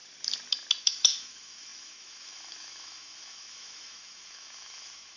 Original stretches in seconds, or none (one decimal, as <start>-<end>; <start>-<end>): 0.0-0.8